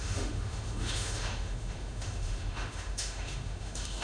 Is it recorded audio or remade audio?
remade